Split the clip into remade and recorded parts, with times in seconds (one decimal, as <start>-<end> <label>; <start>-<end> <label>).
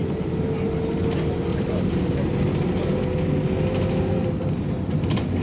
0.0-0.6 remade; 0.6-1.5 recorded; 1.5-2.2 remade; 2.2-5.4 recorded